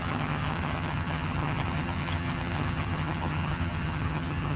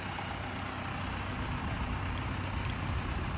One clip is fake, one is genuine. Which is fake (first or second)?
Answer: first